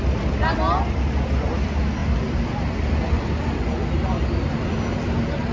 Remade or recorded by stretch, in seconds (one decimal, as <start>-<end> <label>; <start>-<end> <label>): 0.0-5.5 recorded